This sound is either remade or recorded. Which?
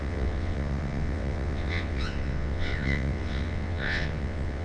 remade